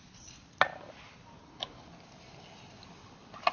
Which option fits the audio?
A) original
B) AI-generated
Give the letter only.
A